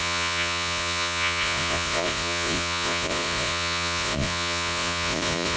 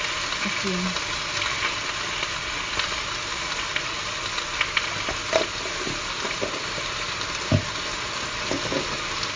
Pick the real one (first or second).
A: second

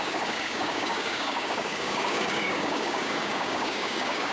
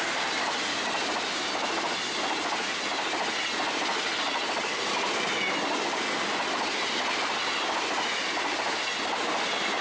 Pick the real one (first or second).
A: second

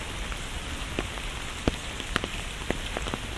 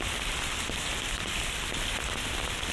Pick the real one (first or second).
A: first